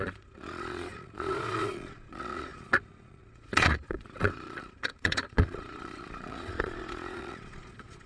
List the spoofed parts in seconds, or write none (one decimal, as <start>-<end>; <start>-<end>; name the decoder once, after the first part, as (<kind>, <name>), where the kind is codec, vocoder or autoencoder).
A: 0.0-8.1 (vocoder, Vocos)